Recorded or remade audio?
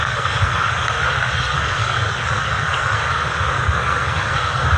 remade